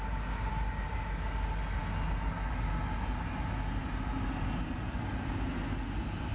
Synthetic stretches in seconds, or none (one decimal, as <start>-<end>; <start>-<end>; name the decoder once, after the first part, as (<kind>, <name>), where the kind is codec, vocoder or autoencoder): none